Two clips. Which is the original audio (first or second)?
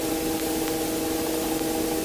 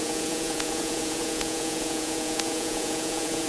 first